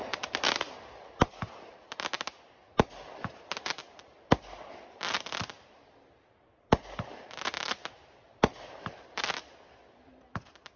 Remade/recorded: recorded